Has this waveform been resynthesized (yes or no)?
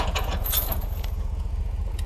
yes